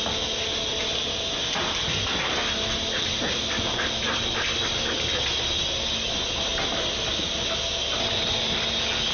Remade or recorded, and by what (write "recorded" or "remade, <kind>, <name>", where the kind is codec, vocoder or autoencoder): recorded